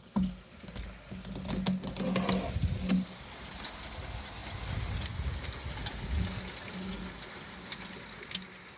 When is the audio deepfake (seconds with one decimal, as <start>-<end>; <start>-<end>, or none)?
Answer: none